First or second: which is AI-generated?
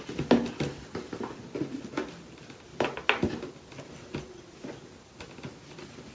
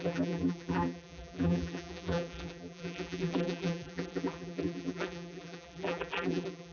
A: second